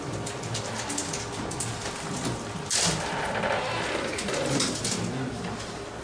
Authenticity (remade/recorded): recorded